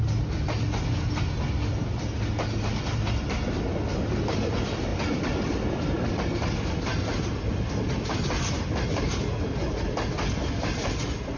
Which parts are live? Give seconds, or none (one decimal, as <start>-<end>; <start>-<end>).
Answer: 0.0-11.4